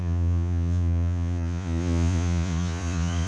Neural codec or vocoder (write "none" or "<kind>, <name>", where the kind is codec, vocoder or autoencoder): vocoder, Vocos